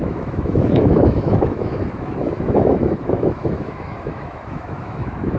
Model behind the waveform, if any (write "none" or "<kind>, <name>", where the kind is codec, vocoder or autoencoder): autoencoder, DAC-VAE